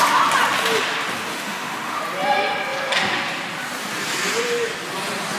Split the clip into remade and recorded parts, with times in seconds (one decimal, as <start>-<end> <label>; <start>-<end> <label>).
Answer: 0.0-1.3 recorded; 1.3-2.0 remade; 2.0-5.4 recorded